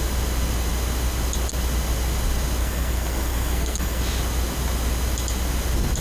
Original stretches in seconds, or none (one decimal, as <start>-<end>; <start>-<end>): 0.0-2.6; 4.0-6.0